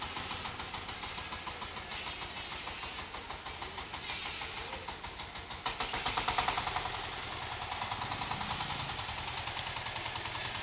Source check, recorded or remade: recorded